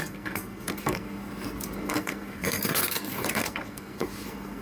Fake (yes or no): yes